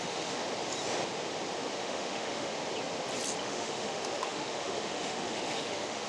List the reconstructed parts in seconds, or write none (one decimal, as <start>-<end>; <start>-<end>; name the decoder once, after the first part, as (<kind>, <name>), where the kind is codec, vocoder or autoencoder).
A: 0.0-0.4 (autoencoder, DAC-VAE); 1.8-2.5; 3.4-6.1

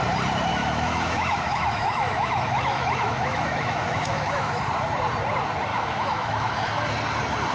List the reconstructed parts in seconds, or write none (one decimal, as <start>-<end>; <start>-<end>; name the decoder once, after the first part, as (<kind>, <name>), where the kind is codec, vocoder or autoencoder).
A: 0.5-4.6 (autoencoder, DAC-VAE); 5.7-6.5